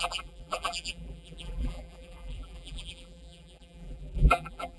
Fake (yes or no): yes